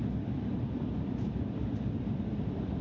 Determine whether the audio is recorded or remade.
recorded